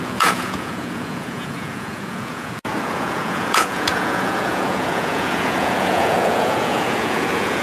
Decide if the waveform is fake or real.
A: fake